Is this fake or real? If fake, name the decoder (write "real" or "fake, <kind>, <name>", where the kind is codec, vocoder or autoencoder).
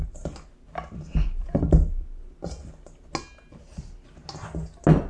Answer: real